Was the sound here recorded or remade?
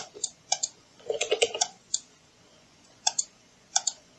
remade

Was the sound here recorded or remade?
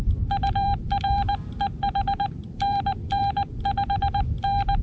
remade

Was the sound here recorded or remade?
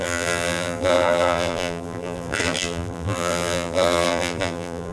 remade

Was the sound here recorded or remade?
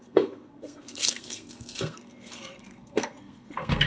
remade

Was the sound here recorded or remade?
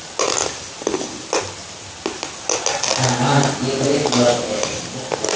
recorded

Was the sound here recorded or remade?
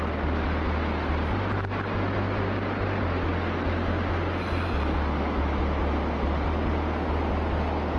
recorded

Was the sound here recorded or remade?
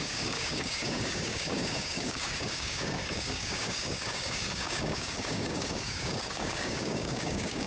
remade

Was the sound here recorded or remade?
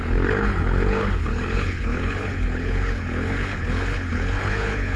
remade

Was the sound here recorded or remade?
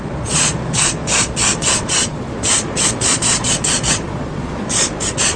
remade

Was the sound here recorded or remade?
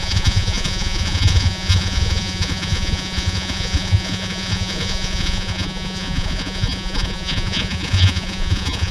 remade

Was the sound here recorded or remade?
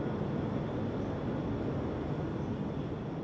recorded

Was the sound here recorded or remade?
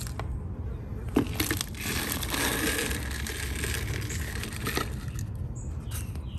recorded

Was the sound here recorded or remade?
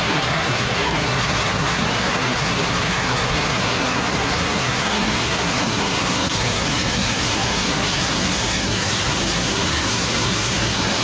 remade